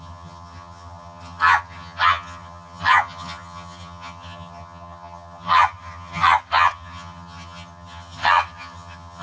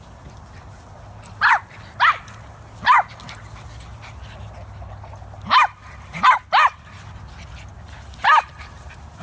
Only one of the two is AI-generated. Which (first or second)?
first